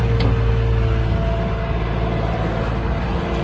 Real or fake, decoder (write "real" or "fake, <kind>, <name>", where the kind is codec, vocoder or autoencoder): real